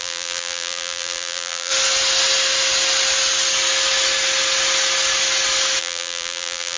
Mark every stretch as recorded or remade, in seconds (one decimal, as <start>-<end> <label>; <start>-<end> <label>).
0.0-1.7 remade; 1.7-5.8 recorded; 5.8-6.8 remade